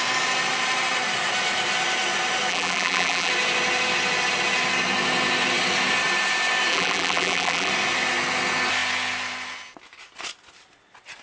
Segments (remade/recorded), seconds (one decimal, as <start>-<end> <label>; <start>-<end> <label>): 0.0-2.5 recorded; 2.5-3.3 remade; 3.3-6.7 recorded; 6.7-7.7 remade; 7.7-11.2 recorded